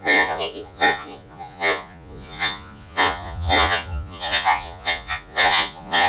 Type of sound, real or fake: fake